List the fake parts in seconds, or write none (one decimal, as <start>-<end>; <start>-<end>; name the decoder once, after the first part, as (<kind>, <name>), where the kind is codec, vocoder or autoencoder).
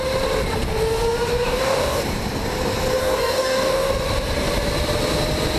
1.3-2.0 (codec, DAC); 3.0-3.9